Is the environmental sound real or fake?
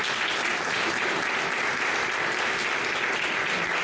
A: real